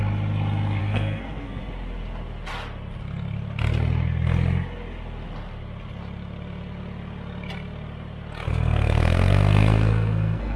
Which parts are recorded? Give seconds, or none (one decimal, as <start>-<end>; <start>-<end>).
0.0-0.8; 1.6-8.5